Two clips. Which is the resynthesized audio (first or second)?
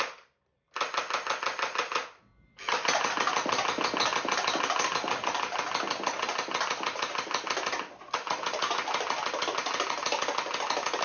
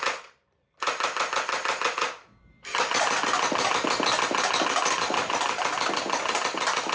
second